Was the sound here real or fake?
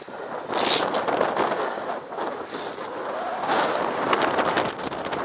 real